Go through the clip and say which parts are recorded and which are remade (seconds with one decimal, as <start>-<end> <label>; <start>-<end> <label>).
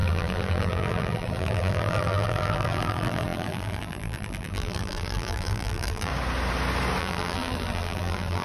0.0-6.1 remade; 6.1-7.0 recorded; 7.0-8.4 remade